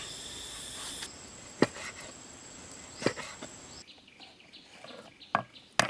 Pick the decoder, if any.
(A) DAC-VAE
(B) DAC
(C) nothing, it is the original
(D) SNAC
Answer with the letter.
C